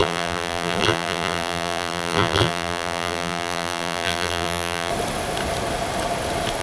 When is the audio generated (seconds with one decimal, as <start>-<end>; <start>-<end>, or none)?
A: 0.0-4.9